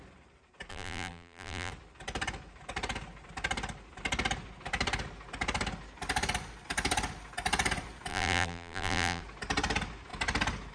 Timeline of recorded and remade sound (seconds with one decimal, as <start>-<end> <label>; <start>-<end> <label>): 0.0-0.7 recorded; 0.7-1.7 remade; 1.7-8.1 recorded; 8.1-9.2 remade; 9.2-10.7 recorded